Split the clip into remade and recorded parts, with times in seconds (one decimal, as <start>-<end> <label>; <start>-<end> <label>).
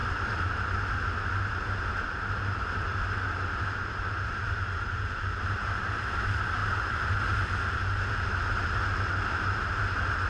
0.0-1.9 recorded; 1.9-2.9 remade; 2.9-4.0 recorded; 4.0-6.6 remade; 6.6-10.3 recorded